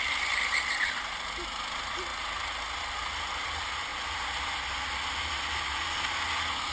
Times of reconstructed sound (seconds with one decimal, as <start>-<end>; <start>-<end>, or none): none